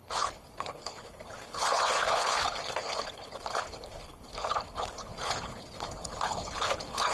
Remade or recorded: remade